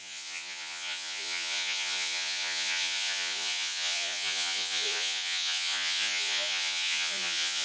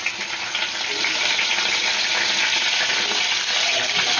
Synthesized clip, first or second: first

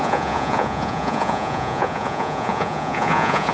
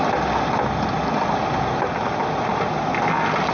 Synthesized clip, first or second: first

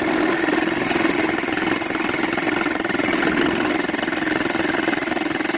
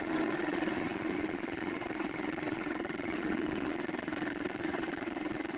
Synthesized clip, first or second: second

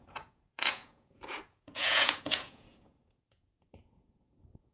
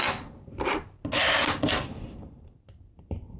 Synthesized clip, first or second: first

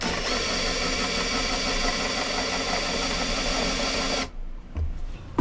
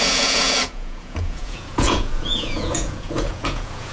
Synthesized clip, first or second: second